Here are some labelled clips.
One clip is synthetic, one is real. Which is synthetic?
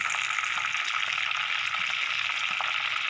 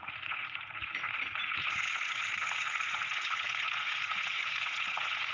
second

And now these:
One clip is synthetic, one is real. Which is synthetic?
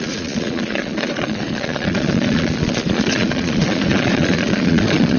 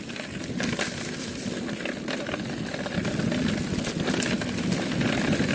first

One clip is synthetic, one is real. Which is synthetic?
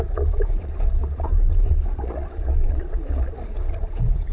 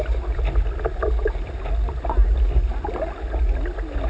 first